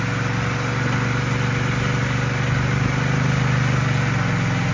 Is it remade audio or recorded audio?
recorded